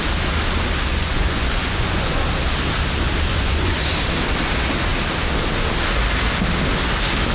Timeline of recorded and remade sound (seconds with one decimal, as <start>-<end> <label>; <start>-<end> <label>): 0.0-0.9 recorded; 0.9-2.2 remade; 2.2-3.3 recorded; 3.3-3.9 remade; 3.9-7.3 recorded